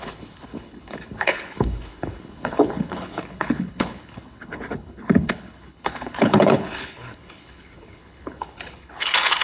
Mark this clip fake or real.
fake